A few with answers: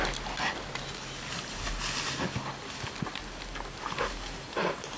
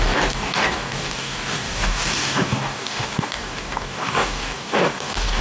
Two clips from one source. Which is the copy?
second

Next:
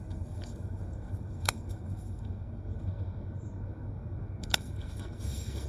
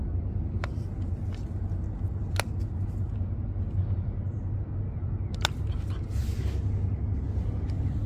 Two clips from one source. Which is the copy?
first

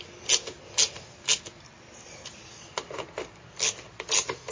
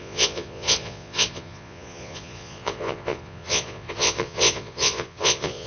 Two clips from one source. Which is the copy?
second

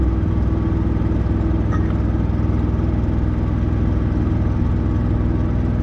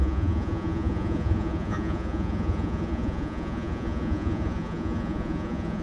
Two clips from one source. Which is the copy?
second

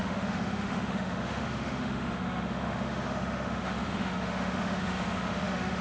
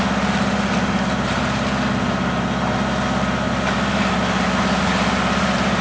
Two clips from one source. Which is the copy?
first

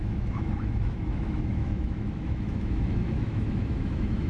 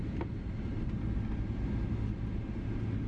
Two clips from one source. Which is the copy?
first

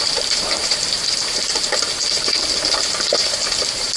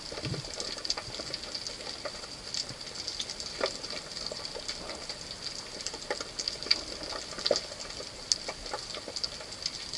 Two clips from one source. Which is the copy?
first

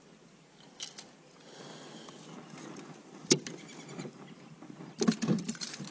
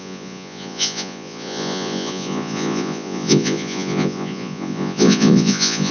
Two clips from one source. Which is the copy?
second